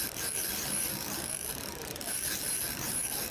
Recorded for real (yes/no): no